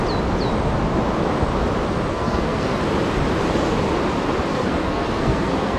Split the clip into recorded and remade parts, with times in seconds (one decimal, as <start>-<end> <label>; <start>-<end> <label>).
0.0-2.1 recorded; 2.1-2.8 remade; 2.8-4.5 recorded; 4.5-5.8 remade